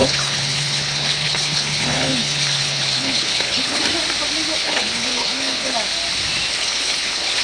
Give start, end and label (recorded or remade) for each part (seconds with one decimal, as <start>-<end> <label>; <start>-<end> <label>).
0.0-3.8 remade; 3.8-4.6 recorded; 4.6-5.7 remade; 5.7-6.5 recorded; 6.5-7.4 remade